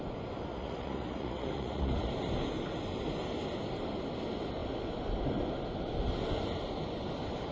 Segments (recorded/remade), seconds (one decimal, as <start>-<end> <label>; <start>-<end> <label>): 0.0-0.5 recorded; 0.5-2.1 remade; 2.1-7.5 recorded